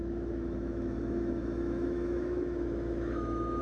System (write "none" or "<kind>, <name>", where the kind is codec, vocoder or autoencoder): autoencoder, DAC-VAE